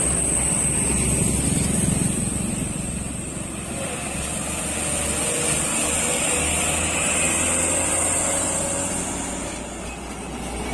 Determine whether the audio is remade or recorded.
recorded